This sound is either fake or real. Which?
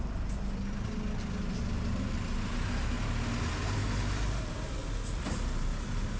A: real